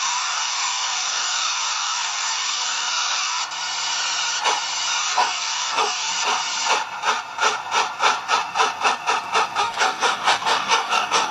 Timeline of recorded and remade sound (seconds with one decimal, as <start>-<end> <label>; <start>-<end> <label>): 0.0-3.4 remade; 3.4-5.0 recorded; 5.0-6.1 remade; 6.1-9.6 recorded; 9.6-11.3 remade

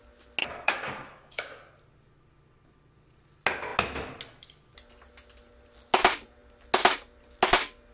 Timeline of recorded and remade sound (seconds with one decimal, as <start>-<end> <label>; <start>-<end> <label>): 0.0-0.4 recorded; 0.4-1.5 remade; 1.5-7.9 recorded

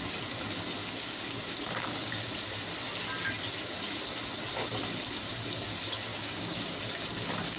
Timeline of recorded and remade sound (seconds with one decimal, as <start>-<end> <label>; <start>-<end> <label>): 0.0-0.8 recorded; 0.8-2.2 remade; 2.2-6.1 recorded; 6.1-6.8 remade; 6.8-7.6 recorded

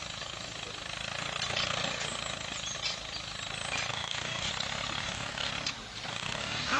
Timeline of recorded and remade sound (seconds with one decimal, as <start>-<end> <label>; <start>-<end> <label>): 0.0-3.9 recorded; 3.9-4.5 remade; 4.5-5.0 recorded; 5.0-5.5 remade; 5.5-6.1 recorded; 6.1-6.8 remade

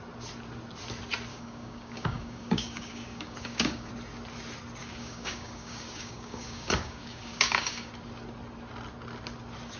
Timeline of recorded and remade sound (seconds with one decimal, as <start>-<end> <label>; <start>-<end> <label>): 0.0-1.3 recorded; 1.3-3.9 remade; 3.9-4.8 recorded; 4.8-7.9 remade; 7.9-9.8 recorded

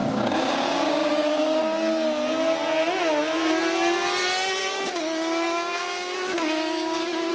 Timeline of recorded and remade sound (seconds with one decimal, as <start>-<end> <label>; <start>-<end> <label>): 0.0-1.6 remade; 1.6-4.6 recorded; 4.6-7.3 remade

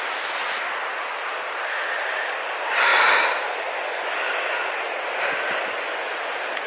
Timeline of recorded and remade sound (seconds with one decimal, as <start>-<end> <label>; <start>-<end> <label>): 0.0-6.7 recorded